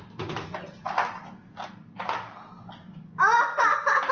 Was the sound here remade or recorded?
recorded